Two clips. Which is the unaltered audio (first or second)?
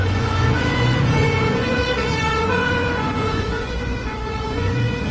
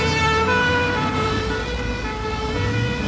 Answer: second